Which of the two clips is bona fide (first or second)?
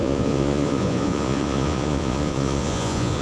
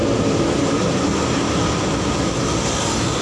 second